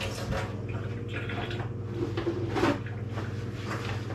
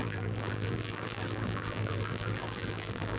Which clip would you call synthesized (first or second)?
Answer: second